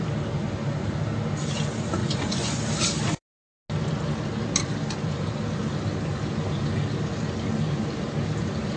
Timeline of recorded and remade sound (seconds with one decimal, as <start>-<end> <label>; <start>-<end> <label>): 0.0-2.0 recorded; 2.0-2.6 remade; 2.6-8.8 recorded